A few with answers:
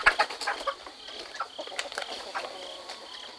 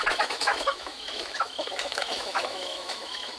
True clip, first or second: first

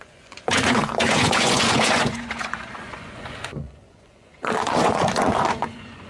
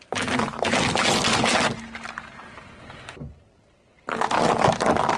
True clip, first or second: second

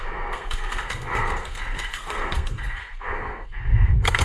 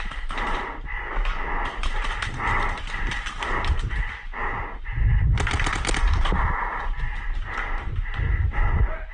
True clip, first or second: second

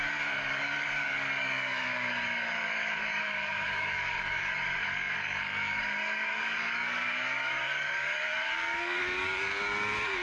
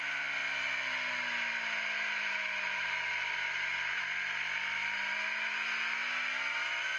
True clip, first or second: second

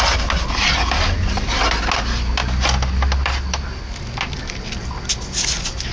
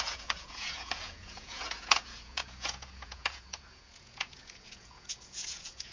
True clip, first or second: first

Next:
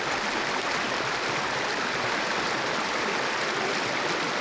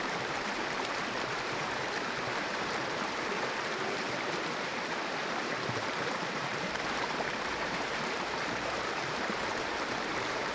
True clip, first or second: first